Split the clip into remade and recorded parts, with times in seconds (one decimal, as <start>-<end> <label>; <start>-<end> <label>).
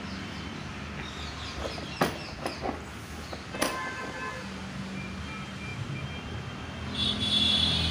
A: 0.0-7.9 recorded